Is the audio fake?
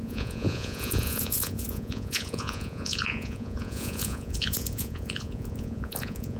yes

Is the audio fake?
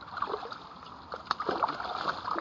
no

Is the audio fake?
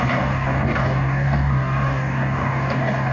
yes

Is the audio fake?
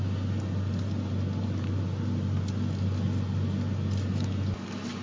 no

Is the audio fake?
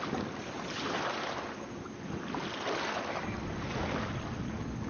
no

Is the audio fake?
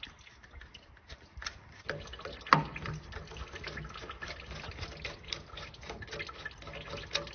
no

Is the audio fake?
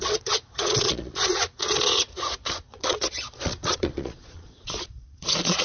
yes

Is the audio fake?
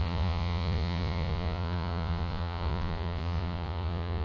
yes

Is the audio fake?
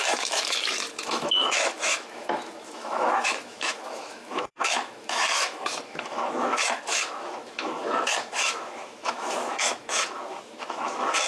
yes